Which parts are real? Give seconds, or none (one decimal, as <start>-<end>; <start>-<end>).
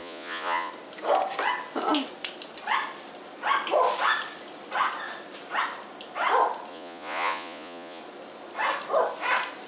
0.7-6.7; 8.0-9.7